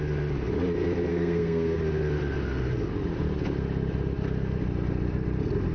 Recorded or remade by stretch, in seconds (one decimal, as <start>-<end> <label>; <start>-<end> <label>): 0.0-1.1 recorded; 1.1-1.8 remade; 1.8-5.7 recorded